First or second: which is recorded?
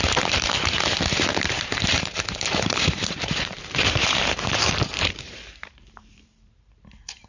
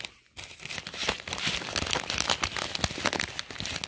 second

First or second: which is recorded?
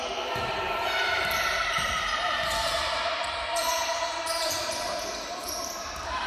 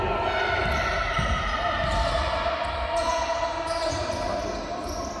second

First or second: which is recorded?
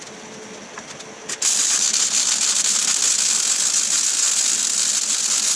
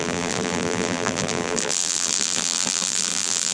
first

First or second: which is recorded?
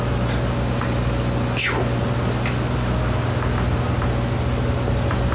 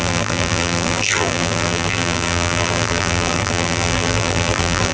first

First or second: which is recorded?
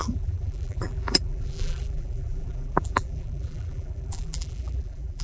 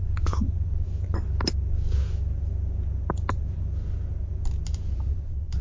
second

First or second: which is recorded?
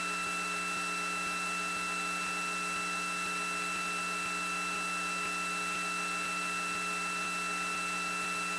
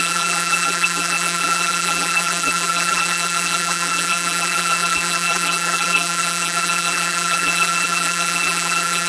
first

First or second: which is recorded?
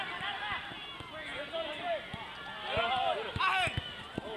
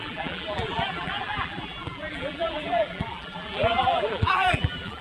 first